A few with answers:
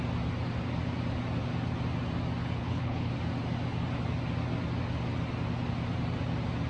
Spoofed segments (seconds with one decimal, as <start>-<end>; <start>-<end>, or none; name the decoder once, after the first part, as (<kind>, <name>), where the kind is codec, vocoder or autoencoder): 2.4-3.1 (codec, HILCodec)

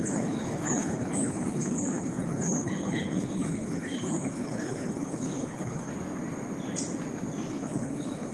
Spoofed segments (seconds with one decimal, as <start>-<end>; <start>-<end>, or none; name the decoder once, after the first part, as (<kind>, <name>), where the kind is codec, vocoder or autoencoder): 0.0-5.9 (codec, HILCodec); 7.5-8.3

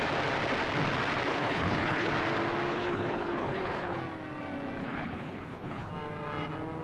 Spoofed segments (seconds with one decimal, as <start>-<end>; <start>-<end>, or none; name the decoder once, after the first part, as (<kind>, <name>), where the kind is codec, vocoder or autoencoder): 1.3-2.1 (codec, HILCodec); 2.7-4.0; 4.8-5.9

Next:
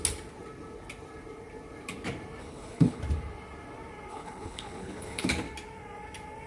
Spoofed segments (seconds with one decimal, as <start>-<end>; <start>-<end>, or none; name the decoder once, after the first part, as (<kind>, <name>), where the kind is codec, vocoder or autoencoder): 2.4-3.0 (codec, HILCodec); 4.1-5.3

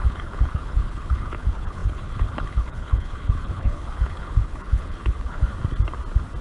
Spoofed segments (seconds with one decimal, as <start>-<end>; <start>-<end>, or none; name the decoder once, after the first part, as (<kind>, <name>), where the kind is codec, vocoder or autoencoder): 0.0-5.5 (codec, HILCodec)

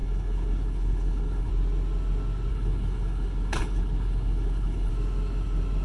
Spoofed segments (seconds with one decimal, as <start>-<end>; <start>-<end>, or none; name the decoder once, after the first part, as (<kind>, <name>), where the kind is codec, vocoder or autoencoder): 0.0-1.5 (codec, HILCodec); 2.5-4.9

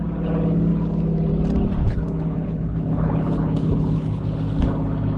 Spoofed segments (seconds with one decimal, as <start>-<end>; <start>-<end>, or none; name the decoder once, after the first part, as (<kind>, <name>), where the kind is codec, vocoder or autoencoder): 1.8-4.2 (codec, HILCodec)